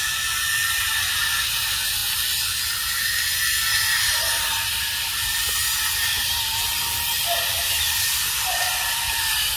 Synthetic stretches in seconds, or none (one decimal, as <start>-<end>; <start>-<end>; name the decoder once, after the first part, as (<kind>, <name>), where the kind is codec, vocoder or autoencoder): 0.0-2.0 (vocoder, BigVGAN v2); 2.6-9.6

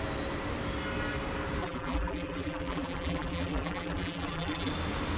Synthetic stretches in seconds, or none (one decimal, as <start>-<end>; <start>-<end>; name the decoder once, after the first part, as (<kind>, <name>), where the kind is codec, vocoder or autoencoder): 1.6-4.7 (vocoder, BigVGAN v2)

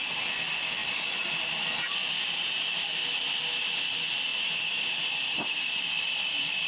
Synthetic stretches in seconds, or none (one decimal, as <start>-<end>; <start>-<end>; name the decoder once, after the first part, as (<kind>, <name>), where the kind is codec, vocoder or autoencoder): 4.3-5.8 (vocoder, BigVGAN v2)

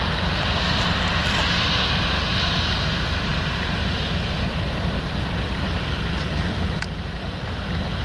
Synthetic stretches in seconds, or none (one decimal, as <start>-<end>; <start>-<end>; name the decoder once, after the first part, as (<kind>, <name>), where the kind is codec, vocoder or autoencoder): 1.2-2.0 (vocoder, BigVGAN v2); 3.3-6.3

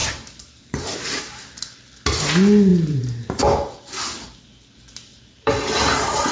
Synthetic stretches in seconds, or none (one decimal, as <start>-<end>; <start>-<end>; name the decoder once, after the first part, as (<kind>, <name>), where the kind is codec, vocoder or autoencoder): 0.0-1.4 (vocoder, BigVGAN v2); 2.7-3.4; 5.1-6.3

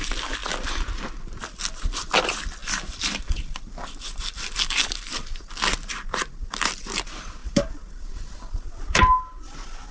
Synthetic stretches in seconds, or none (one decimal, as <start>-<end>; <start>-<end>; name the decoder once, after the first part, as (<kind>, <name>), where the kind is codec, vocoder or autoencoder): 2.6-5.1 (vocoder, BigVGAN v2); 7.4-9.0